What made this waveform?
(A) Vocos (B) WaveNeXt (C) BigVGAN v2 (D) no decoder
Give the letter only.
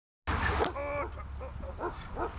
D